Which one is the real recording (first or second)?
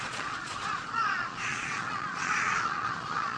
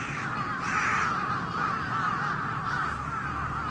second